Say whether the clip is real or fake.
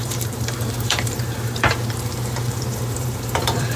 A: fake